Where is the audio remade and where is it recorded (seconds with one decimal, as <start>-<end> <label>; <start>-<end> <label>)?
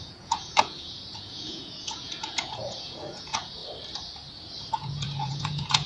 0.0-3.6 remade; 3.6-4.7 recorded; 4.7-5.9 remade